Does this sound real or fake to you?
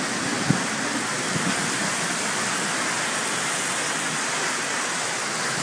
real